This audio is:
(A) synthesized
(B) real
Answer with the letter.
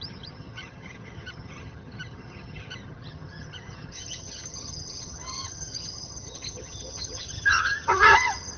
A